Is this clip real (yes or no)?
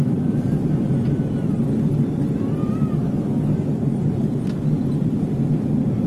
yes